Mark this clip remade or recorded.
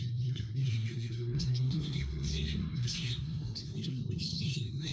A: remade